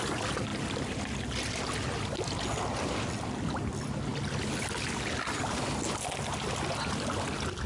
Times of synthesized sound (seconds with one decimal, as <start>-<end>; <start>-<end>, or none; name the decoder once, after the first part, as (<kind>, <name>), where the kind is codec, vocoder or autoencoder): none